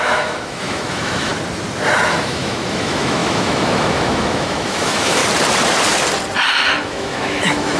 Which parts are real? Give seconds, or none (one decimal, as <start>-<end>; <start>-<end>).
1.3-2.1; 5.2-6.8